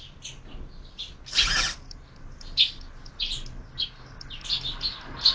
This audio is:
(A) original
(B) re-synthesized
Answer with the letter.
A